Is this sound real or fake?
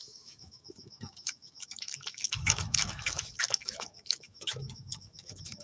fake